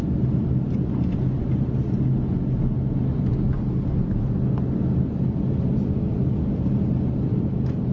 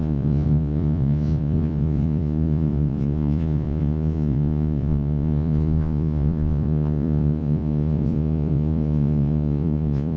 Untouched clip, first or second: first